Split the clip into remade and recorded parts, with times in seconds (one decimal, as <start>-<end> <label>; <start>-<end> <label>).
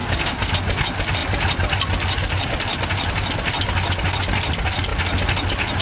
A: 0.0-0.5 remade; 0.5-5.8 recorded